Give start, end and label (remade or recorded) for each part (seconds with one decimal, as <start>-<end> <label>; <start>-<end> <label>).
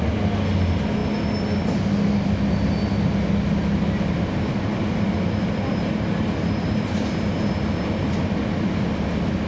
0.0-9.5 recorded